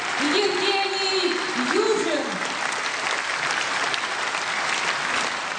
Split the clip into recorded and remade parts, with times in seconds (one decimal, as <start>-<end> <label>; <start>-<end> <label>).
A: 0.0-5.6 recorded